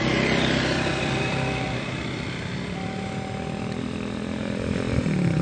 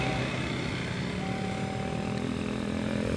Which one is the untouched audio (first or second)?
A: second